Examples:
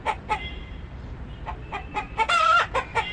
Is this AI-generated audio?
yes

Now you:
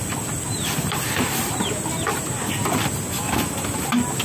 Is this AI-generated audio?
no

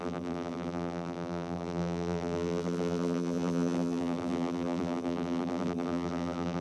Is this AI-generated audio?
yes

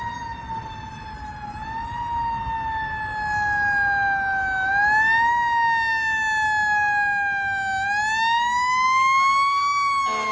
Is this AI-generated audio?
no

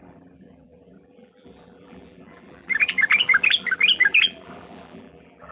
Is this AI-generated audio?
yes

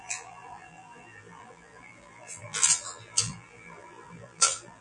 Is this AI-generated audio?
yes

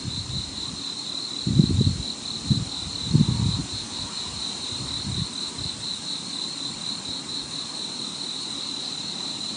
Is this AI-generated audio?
no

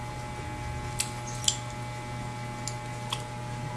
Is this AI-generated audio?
no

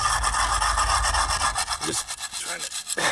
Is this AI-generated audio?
no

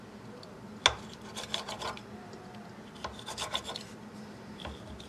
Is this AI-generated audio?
no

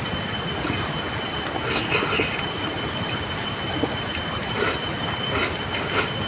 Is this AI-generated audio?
no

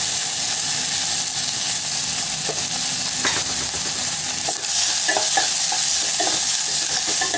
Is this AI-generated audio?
no